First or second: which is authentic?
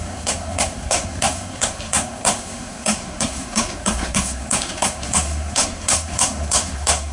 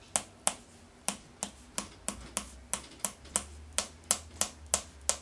second